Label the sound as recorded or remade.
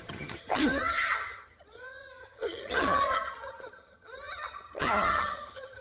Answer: remade